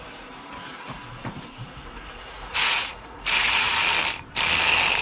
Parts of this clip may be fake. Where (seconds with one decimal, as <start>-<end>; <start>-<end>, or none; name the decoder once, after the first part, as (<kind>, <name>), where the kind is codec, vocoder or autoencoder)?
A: 1.1-3.8 (vocoder, Vocos)